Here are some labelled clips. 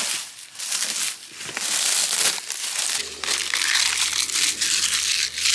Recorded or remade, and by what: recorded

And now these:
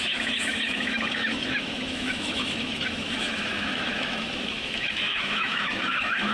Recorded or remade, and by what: remade, autoencoder, DAC-VAE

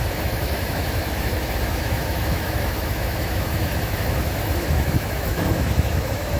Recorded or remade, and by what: remade, autoencoder, DAC-VAE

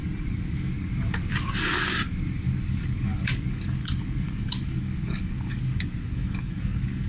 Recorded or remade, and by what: remade, codec, DAC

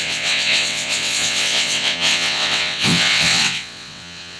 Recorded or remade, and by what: remade, vocoder, WaveNeXt